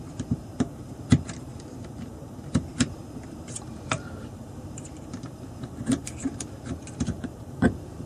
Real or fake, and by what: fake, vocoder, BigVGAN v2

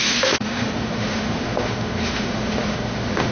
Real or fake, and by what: fake, autoencoder, DAC-VAE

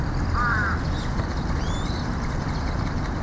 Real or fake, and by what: real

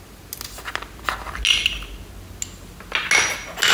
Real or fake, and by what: real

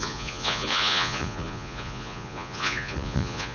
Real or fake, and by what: fake, vocoder, Vocos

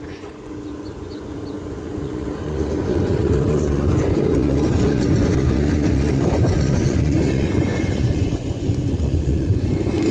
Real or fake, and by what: fake, vocoder, Vocos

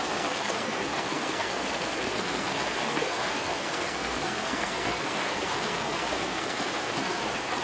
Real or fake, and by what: fake, codec, SNAC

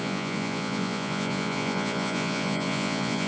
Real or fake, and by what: fake, vocoder, Vocos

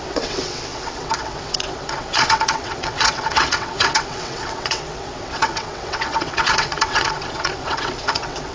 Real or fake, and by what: fake, vocoder, WaveNeXt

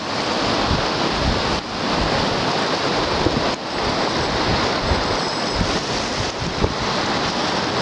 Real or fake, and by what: real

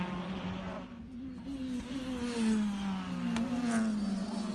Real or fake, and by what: real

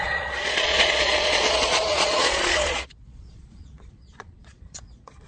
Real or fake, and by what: fake, vocoder, Vocos